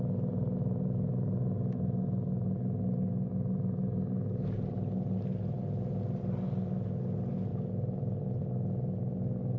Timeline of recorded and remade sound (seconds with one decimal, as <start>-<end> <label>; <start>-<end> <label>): 0.0-9.6 recorded